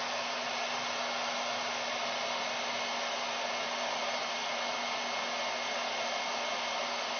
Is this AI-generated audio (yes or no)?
no